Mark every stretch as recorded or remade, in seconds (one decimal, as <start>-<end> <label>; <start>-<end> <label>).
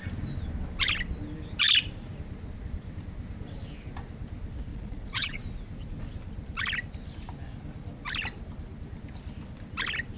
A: 0.0-4.7 recorded; 4.7-5.4 remade; 5.4-10.2 recorded